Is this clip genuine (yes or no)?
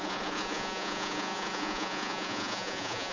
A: no